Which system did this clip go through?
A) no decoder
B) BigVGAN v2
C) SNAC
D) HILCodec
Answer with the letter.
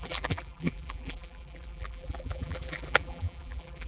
B